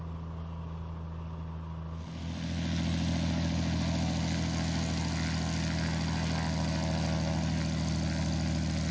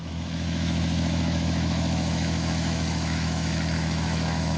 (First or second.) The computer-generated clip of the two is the second